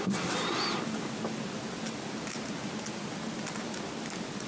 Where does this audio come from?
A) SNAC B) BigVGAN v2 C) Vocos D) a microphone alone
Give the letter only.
D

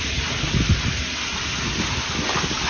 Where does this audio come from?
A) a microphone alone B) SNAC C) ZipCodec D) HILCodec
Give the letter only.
A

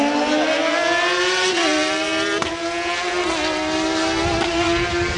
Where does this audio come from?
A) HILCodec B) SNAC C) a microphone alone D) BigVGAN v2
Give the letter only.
C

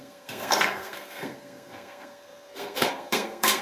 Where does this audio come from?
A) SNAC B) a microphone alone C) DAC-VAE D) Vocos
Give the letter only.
A